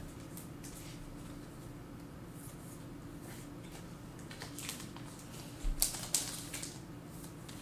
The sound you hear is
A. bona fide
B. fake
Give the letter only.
A